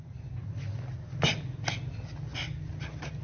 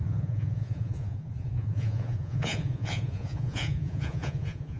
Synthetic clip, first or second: second